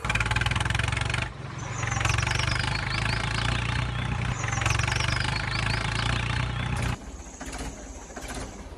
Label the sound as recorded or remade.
recorded